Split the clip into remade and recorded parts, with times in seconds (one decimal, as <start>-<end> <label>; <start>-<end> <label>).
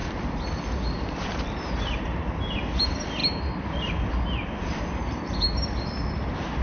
0.0-6.6 recorded